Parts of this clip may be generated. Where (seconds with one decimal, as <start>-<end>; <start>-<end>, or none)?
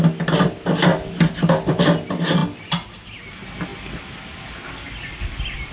none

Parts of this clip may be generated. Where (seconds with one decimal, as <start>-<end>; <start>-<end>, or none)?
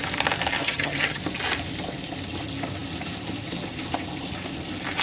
0.6-1.2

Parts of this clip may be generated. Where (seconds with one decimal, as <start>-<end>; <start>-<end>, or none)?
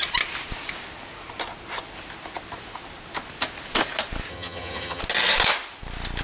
4.3-5.0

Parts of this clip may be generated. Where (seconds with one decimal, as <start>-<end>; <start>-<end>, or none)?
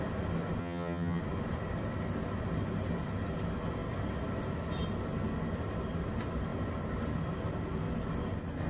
0.6-1.2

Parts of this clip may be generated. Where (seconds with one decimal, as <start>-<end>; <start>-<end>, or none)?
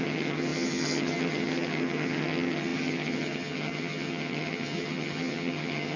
0.0-6.0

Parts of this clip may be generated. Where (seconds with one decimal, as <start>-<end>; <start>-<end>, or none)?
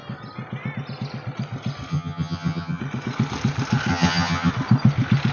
1.9-2.8; 3.9-4.5